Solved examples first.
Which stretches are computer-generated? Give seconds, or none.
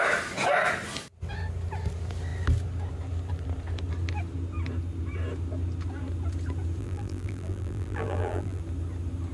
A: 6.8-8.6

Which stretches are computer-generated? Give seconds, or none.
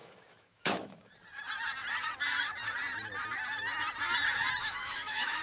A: 0.0-1.1; 4.6-5.4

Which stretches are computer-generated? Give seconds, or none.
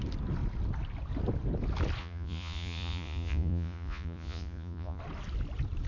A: 2.0-5.0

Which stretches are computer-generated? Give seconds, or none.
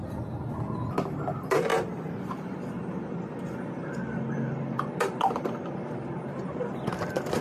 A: 1.7-2.7; 3.8-7.4